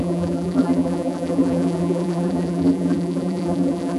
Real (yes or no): no